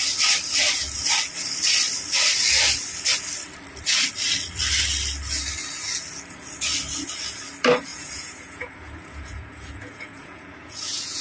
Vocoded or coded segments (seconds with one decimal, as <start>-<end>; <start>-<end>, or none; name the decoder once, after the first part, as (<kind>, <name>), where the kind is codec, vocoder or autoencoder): 7.9-11.2 (vocoder, Vocos)